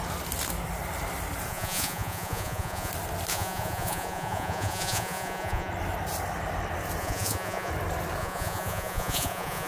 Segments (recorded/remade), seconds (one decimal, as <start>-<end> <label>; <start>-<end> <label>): 0.0-1.5 recorded; 1.5-2.9 remade; 2.9-3.3 recorded; 3.3-5.7 remade; 5.7-7.0 recorded; 7.0-7.7 remade; 7.7-8.2 recorded; 8.2-9.7 remade